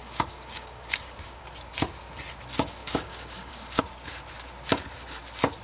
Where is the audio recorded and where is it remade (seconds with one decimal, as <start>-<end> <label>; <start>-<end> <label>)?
0.0-1.4 remade; 1.4-2.8 recorded; 2.8-3.8 remade; 3.8-5.6 recorded